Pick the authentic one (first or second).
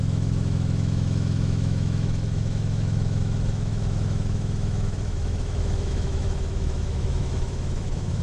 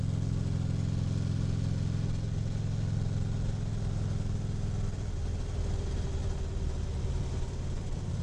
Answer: second